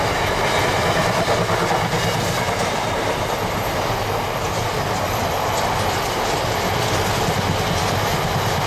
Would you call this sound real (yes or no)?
yes